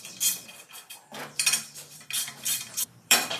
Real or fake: fake